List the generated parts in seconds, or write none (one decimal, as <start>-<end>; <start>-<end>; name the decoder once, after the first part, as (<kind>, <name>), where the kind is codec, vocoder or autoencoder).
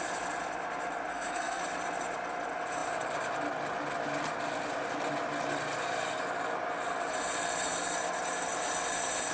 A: 1.1-1.6 (codec, SNAC)